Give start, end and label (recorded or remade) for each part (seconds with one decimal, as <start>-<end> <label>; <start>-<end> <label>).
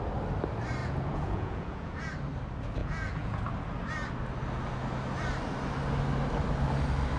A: 0.0-0.8 recorded; 0.8-2.1 remade; 2.1-2.8 recorded; 2.8-3.4 remade; 3.4-7.2 recorded